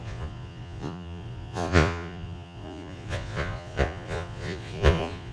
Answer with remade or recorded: remade